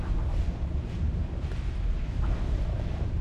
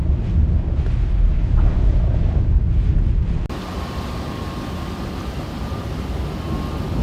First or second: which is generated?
first